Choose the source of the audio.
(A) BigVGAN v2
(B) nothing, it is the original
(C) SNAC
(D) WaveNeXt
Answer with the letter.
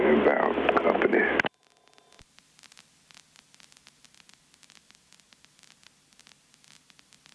B